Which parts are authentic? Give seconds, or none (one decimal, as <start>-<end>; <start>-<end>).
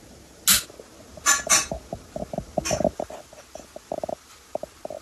0.0-5.0